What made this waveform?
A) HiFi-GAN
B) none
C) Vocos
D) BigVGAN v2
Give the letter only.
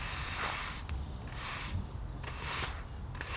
B